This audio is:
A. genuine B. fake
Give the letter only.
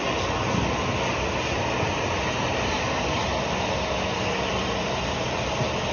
A